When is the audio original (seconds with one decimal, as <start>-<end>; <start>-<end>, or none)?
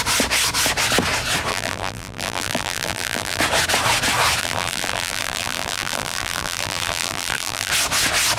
0.0-1.5; 3.4-4.4; 7.7-8.4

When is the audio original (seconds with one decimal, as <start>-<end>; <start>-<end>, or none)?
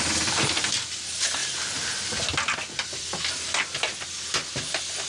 0.0-5.1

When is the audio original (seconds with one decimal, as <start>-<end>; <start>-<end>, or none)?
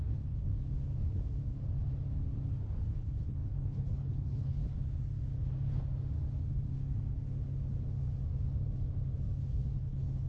0.5-2.9; 4.6-9.8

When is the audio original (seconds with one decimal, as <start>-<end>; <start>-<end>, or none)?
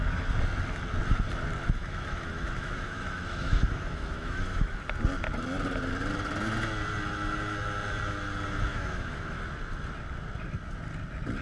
0.0-1.8; 4.8-8.7; 9.4-11.4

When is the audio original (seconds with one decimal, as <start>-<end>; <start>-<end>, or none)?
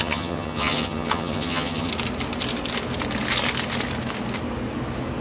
1.9-5.2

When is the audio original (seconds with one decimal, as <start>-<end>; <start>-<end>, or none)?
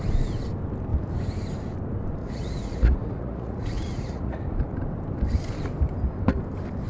0.0-2.2; 4.4-6.9